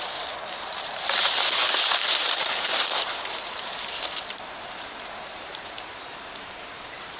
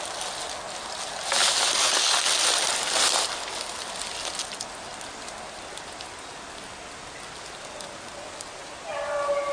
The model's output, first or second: first